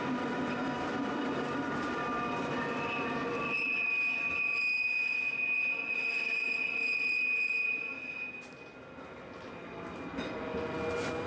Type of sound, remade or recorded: recorded